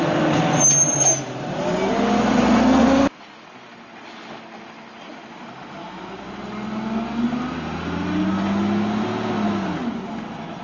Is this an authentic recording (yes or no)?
yes